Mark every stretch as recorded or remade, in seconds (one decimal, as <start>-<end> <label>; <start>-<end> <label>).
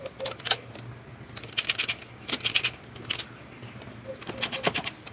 0.0-5.1 recorded